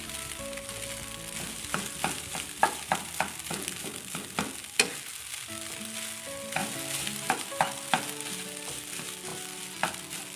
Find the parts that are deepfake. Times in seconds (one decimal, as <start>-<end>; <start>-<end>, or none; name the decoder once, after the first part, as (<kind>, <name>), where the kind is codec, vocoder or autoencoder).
none

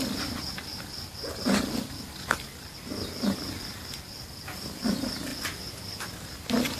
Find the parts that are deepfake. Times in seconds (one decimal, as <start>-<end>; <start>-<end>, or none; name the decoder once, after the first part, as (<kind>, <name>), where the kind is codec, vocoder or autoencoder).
none

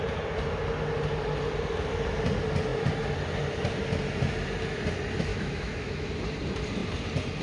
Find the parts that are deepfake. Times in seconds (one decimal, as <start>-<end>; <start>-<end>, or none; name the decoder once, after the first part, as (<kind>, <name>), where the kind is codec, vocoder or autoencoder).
5.3-6.1 (autoencoder, DAC-VAE)

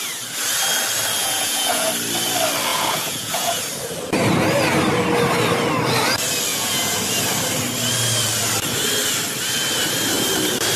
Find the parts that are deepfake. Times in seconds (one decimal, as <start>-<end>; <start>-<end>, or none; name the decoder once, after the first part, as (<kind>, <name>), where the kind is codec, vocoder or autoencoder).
1.2-1.9 (vocoder, Vocos); 2.7-3.6; 6.5-7.0

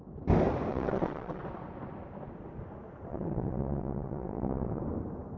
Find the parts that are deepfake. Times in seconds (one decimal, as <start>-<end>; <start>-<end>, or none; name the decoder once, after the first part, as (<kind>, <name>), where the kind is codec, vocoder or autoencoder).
0.7-1.4 (vocoder, WaveNeXt); 3.1-4.8